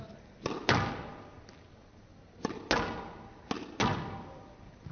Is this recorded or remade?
recorded